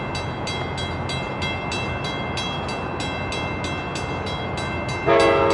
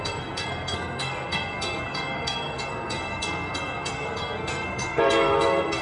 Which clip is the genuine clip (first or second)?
first